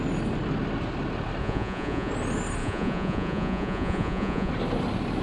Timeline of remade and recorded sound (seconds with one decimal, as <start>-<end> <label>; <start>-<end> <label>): 0.0-1.4 recorded; 1.4-2.1 remade; 2.1-2.6 recorded; 2.6-4.5 remade; 4.5-5.2 recorded